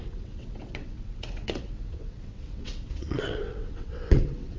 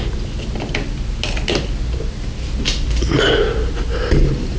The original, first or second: second